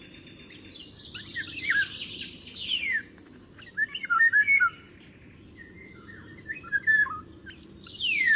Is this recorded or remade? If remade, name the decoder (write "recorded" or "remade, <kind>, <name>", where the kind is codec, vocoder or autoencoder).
remade, vocoder, BigVGAN v2